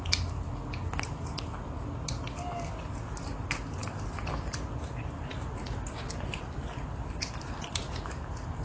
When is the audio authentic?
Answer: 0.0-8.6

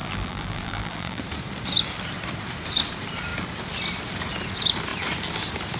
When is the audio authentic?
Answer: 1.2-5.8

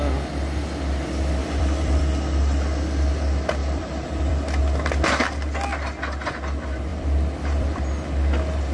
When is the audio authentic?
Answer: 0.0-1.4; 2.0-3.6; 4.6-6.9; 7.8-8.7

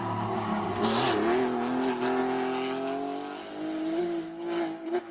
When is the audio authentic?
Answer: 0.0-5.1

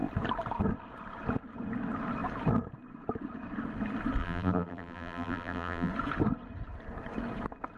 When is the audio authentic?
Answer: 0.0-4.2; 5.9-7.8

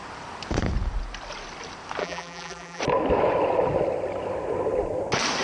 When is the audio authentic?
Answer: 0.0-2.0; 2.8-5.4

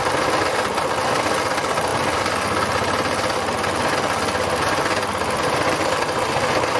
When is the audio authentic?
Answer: 0.0-6.8

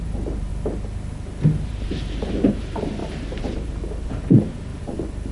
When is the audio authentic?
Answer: 0.5-1.7; 4.7-5.3